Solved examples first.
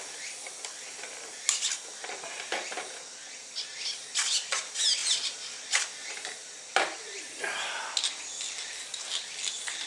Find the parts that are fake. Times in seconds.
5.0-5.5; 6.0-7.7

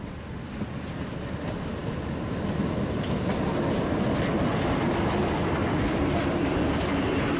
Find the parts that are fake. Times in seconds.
none

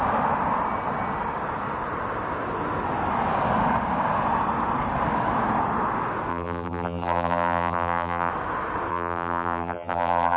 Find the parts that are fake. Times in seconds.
6.3-8.3; 8.9-10.4

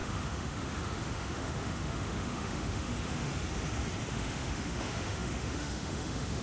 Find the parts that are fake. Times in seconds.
0.0-3.3; 4.1-6.4

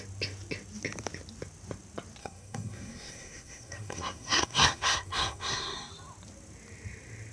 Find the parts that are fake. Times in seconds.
2.2-5.9